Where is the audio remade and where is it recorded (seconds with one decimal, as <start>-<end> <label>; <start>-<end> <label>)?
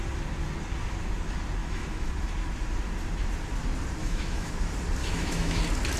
0.0-1.6 recorded; 1.6-2.1 remade; 2.1-4.0 recorded; 4.0-4.5 remade; 4.5-5.0 recorded; 5.0-5.6 remade; 5.6-6.0 recorded